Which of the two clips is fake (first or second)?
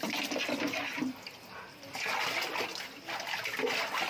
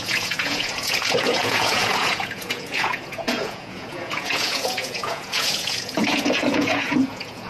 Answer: second